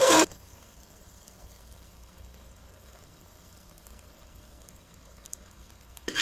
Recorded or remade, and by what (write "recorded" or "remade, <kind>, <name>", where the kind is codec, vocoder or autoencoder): remade, codec, SNAC